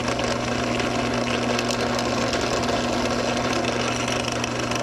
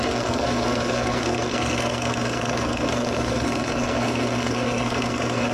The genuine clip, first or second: first